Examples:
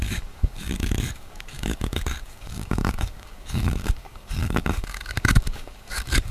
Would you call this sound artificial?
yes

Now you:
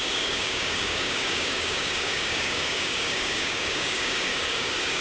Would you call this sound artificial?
yes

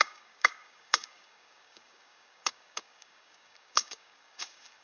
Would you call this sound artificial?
yes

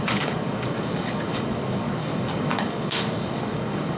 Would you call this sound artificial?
yes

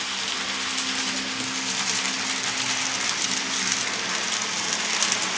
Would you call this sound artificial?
no